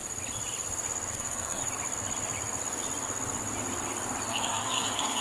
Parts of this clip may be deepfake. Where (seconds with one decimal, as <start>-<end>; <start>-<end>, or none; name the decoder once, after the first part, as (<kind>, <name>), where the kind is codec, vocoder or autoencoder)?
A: 1.1-1.6 (codec, SNAC); 4.3-5.2